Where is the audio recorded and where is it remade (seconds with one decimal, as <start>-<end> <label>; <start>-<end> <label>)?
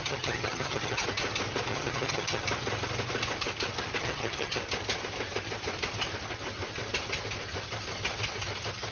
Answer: 0.0-1.0 remade; 1.0-1.7 recorded; 1.7-2.4 remade; 2.4-4.0 recorded; 4.0-4.6 remade; 4.6-8.9 recorded